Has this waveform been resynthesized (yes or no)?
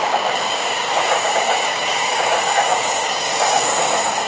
yes